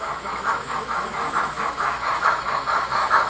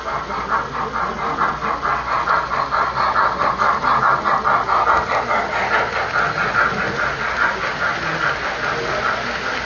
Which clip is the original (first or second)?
second